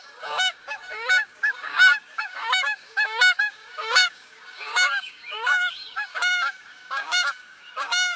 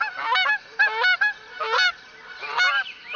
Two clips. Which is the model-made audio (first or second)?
first